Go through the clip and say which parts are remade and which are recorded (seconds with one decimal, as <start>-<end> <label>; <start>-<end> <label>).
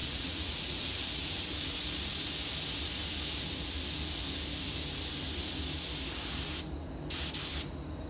0.0-0.9 remade; 0.9-8.1 recorded